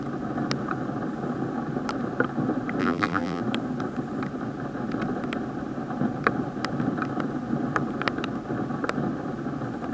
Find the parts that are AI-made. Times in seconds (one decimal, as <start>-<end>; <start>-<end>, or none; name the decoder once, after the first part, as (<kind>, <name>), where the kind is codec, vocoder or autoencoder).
2.8-3.4 (vocoder, BigVGAN v2)